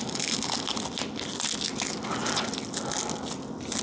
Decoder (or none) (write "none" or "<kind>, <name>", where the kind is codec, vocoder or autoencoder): none